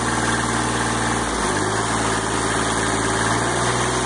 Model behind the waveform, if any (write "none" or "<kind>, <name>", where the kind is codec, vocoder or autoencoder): none